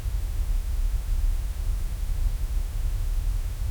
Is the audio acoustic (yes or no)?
no